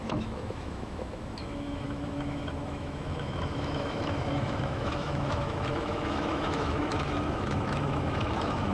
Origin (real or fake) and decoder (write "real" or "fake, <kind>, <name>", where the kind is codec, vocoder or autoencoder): fake, autoencoder, DAC-VAE